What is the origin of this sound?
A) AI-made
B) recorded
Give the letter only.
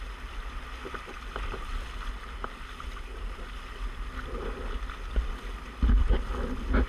B